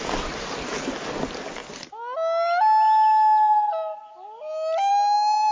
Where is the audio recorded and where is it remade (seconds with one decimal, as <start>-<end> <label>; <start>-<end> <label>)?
0.0-5.5 recorded